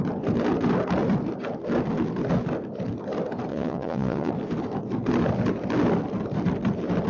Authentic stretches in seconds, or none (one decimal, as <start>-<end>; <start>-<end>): 0.0-3.5; 4.3-7.1